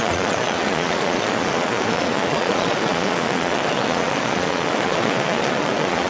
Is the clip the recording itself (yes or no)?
no